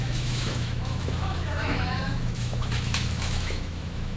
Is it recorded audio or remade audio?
remade